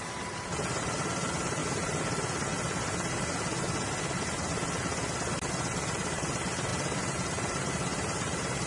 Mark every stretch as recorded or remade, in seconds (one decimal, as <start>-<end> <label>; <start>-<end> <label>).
0.0-1.6 remade; 1.6-5.5 recorded; 5.5-8.7 remade